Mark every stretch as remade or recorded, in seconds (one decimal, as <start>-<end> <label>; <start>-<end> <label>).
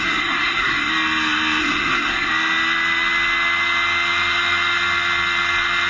0.0-0.9 remade; 0.9-1.6 recorded; 1.6-2.3 remade; 2.3-5.9 recorded